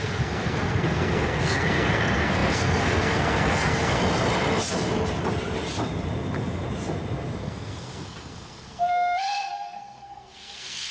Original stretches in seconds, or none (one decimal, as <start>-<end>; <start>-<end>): 4.0-7.4